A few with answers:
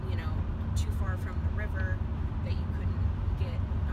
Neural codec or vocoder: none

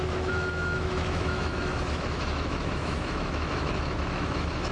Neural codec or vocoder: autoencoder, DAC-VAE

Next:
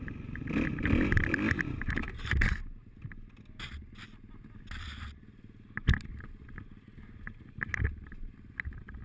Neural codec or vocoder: none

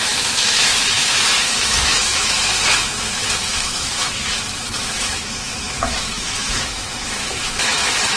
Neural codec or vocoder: autoencoder, DAC-VAE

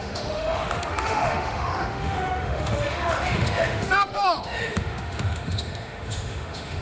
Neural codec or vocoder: autoencoder, DAC-VAE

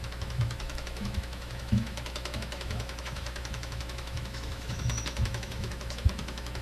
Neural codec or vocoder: autoencoder, DAC-VAE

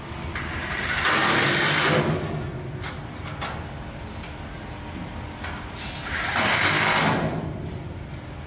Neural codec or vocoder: none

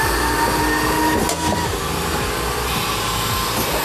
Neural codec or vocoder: none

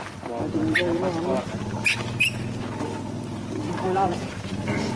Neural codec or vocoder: none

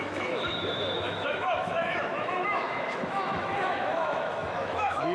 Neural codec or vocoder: autoencoder, DAC-VAE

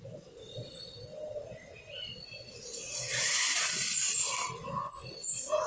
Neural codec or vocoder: none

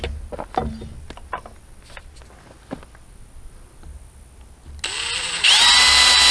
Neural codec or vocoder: none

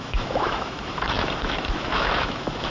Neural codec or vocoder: autoencoder, DAC-VAE